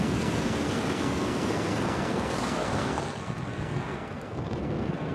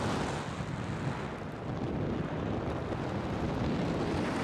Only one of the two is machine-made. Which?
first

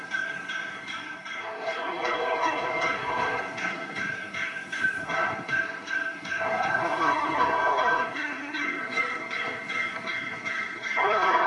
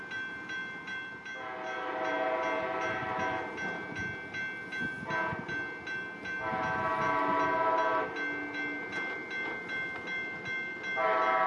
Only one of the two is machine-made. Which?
first